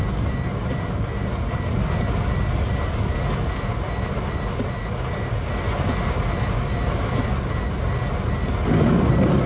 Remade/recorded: recorded